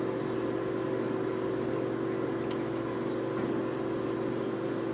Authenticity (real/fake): real